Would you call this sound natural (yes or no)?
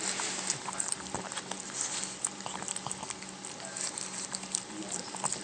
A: yes